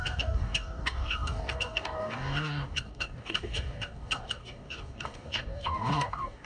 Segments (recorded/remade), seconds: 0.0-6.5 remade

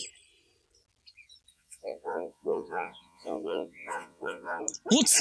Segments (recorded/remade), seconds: 0.0-1.5 recorded; 1.5-4.6 remade; 4.6-5.2 recorded

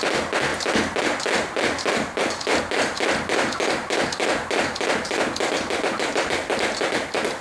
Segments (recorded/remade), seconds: 0.0-7.4 recorded

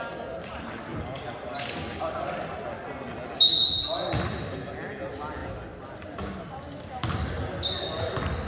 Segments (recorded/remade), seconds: 0.0-8.5 recorded